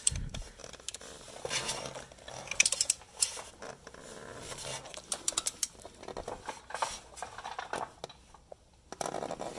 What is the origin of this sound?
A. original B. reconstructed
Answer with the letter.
A